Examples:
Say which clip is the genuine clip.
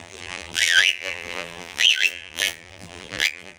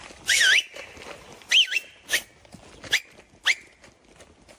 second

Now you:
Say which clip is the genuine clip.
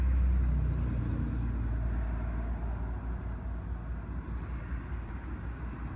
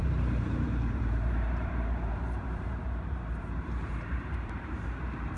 first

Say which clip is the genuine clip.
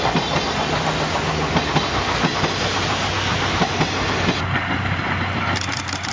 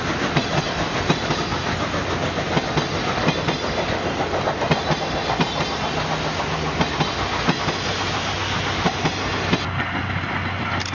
second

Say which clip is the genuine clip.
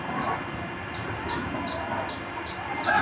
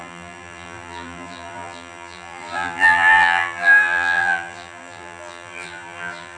first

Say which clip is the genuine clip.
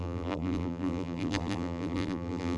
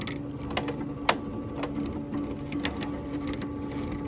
second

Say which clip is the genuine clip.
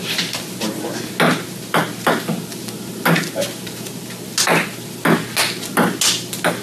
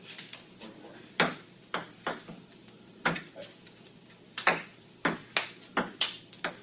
first